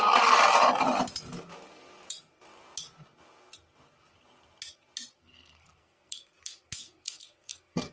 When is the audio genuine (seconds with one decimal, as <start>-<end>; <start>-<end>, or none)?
0.0-5.1